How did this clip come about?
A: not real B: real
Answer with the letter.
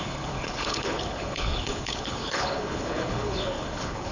A